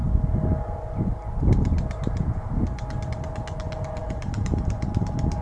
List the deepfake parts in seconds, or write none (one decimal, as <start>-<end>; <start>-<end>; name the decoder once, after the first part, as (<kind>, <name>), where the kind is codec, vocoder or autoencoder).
4.0-5.4 (vocoder, BigVGAN v2)